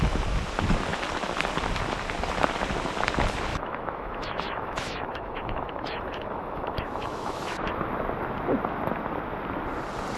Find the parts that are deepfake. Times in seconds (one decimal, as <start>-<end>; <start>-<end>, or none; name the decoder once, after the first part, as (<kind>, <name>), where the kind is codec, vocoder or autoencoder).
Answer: 3.5-7.7 (autoencoder, DAC-VAE)